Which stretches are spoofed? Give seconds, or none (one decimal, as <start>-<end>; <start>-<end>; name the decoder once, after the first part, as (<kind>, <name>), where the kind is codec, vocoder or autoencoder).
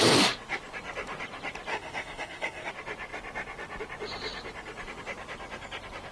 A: 1.7-2.7 (codec, SNAC)